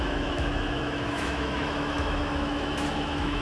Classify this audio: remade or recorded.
remade